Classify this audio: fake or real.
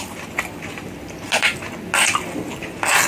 real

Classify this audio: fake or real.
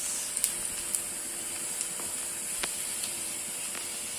real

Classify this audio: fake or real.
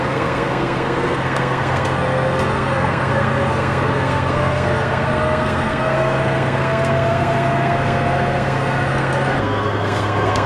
fake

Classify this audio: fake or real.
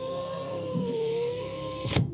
fake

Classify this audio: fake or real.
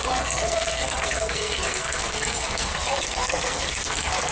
fake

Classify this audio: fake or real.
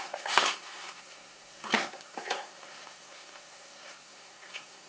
fake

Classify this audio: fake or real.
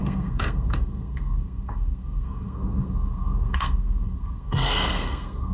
fake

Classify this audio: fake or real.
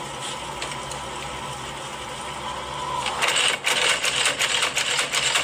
real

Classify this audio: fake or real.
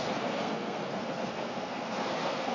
fake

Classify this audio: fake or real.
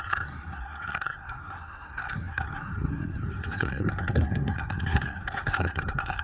fake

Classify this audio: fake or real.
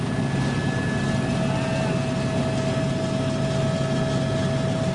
real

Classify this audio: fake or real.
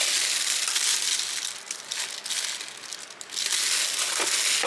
real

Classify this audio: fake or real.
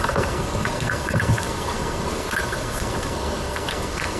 fake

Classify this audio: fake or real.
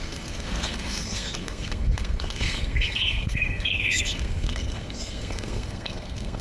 fake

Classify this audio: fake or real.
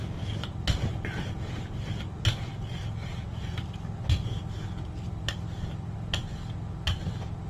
real